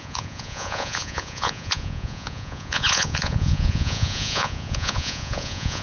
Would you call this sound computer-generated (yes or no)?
yes